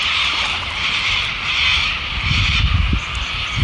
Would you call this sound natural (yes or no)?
no